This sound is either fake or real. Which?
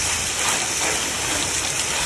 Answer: fake